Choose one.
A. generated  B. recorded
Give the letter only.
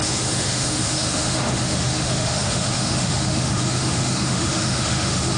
A